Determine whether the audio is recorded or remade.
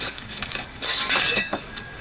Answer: remade